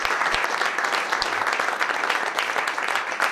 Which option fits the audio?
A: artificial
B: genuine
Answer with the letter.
B